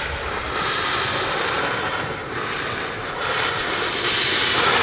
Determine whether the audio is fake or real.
fake